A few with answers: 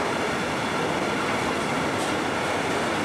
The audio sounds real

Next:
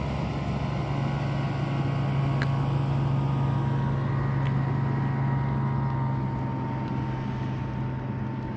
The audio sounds real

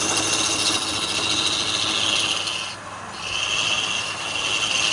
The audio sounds real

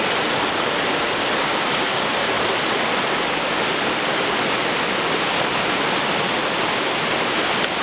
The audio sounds real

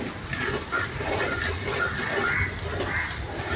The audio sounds real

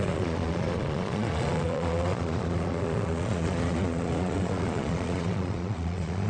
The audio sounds fake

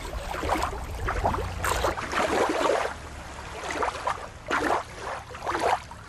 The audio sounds real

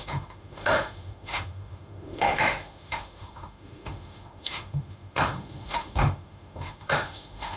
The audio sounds fake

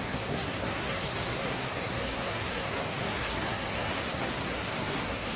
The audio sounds fake